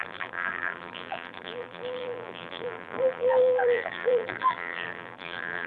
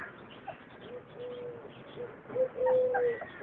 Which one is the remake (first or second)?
first